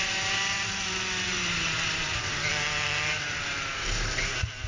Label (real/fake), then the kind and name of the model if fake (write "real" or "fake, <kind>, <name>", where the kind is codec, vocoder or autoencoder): fake, vocoder, BigVGAN v2